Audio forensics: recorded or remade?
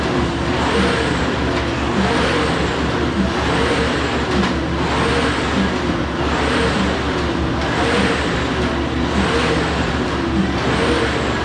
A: recorded